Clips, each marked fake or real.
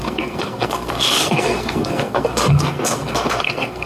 fake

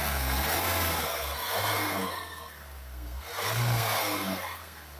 fake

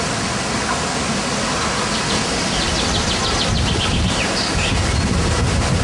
real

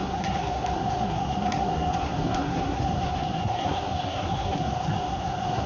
fake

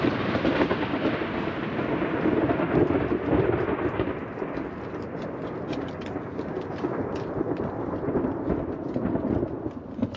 real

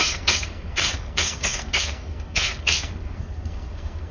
fake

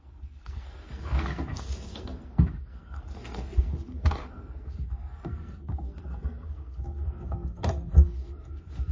fake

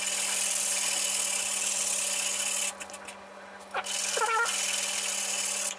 real